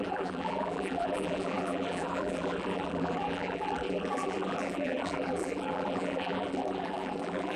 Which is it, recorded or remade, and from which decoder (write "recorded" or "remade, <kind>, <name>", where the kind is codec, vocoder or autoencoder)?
remade, vocoder, BigVGAN v2